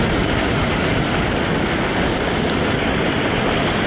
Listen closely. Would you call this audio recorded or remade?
recorded